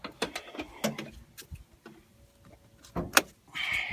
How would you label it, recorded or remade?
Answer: recorded